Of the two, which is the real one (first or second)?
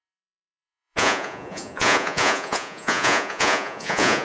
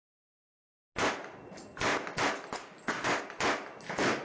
second